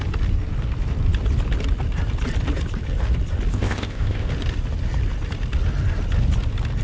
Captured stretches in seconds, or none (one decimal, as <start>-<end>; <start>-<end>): 0.0-3.5; 4.3-6.8